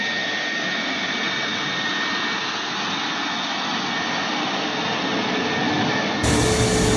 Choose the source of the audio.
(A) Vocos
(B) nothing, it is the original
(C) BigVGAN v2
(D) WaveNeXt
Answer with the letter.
B